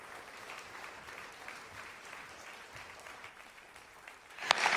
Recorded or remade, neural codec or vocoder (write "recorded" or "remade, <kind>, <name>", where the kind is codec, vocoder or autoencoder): remade, vocoder, BigVGAN v2